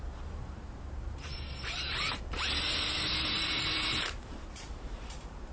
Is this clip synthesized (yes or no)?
yes